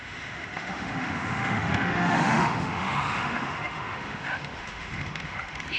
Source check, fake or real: fake